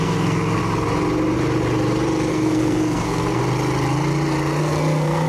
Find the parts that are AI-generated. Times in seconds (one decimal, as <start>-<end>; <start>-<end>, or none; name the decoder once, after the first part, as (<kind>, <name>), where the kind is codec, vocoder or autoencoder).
0.0-0.6 (codec, SNAC); 2.3-3.4; 4.6-5.3